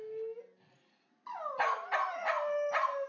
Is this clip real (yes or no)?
yes